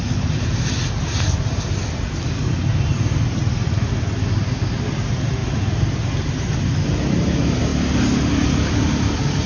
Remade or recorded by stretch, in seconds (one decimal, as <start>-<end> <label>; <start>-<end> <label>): 0.0-9.5 recorded